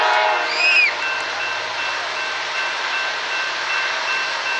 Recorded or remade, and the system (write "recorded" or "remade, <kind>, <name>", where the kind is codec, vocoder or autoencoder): recorded